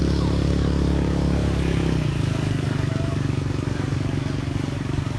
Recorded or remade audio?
remade